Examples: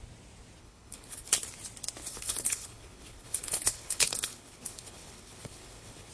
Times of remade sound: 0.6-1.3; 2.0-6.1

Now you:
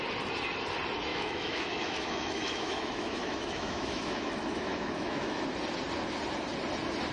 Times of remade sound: 1.1-5.4

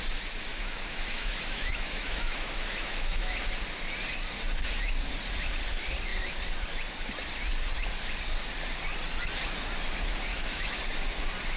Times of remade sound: 0.5-3.4; 10.3-10.8

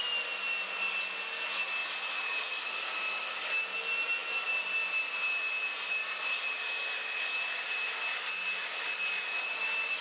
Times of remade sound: none

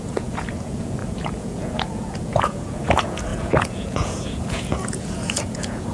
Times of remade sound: 0.0-5.9

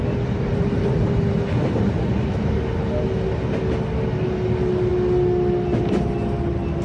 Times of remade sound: none